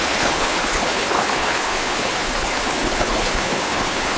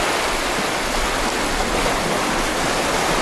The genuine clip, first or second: second